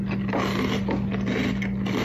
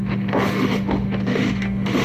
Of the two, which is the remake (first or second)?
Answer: second